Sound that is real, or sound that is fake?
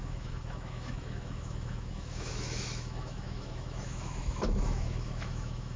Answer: fake